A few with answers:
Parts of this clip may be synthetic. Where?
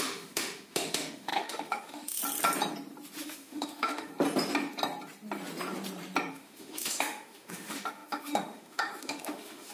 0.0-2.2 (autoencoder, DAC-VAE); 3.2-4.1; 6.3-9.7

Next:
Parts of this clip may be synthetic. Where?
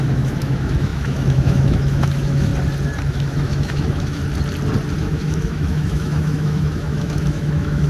0.0-2.5 (autoencoder, DAC-VAE); 3.1-4.2; 5.0-7.9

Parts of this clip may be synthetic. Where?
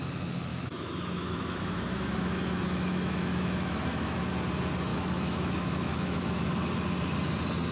0.5-4.2 (autoencoder, DAC-VAE); 4.9-6.4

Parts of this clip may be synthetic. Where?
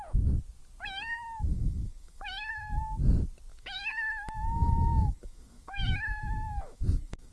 1.5-2.8 (autoencoder, DAC-VAE); 3.5-7.3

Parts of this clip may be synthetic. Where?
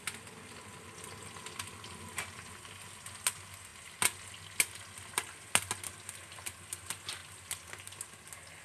none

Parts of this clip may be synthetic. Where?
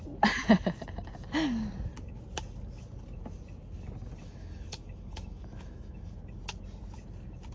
4.2-6.1 (autoencoder, DAC-VAE)